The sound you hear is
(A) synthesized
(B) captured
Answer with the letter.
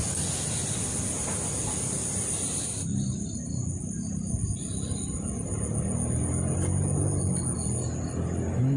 B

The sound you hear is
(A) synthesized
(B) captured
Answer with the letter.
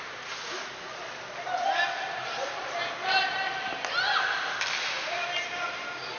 B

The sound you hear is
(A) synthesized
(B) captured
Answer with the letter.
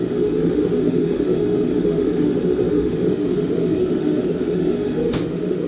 A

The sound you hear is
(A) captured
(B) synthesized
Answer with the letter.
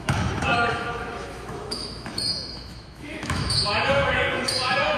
B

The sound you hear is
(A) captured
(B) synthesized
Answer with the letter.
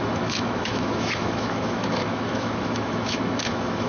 B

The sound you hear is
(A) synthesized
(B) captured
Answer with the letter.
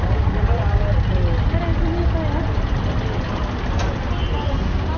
B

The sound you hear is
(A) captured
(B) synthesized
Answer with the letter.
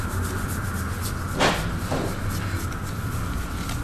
A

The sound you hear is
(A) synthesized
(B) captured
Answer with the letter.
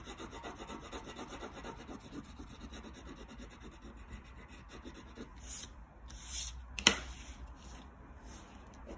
B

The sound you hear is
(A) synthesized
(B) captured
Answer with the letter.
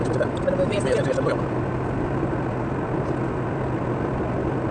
B